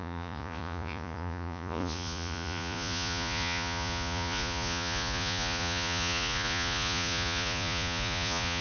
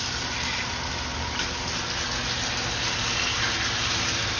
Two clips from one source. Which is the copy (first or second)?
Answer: first